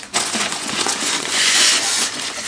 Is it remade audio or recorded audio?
remade